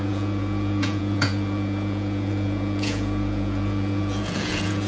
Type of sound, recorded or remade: remade